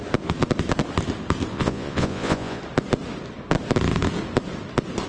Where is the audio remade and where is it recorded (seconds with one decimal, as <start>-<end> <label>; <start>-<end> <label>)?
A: 0.0-1.5 recorded; 1.5-2.6 remade; 2.6-5.1 recorded